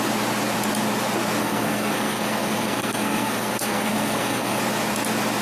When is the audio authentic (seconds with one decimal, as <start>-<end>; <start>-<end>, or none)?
0.0-1.4; 4.6-5.4